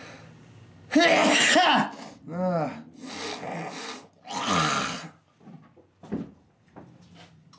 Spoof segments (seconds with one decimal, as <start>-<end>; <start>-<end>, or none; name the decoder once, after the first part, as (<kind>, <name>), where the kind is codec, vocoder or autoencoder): none